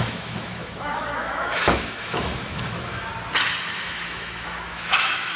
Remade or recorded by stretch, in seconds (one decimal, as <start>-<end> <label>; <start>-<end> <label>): 0.0-3.1 remade; 3.1-3.7 recorded; 3.7-5.4 remade